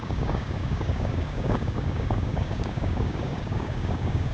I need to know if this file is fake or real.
fake